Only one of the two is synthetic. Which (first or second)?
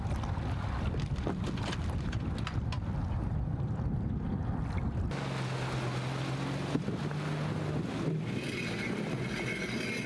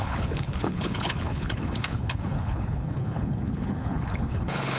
second